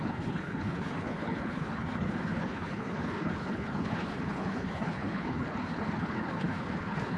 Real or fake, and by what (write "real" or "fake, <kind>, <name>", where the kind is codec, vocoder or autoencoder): fake, codec, HILCodec